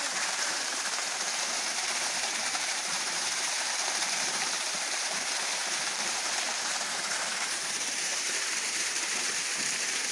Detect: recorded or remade remade